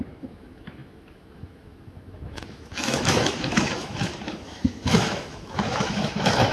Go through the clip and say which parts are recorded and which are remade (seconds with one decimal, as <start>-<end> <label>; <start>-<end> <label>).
0.0-6.5 remade